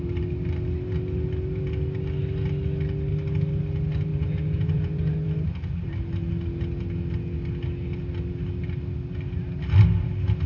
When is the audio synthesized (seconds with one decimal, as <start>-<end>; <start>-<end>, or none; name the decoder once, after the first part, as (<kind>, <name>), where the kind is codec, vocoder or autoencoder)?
4.1-5.1 (vocoder, Vocos)